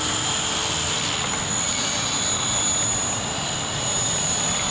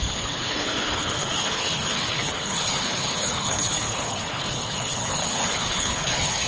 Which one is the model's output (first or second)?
second